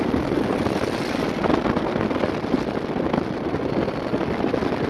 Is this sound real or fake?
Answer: real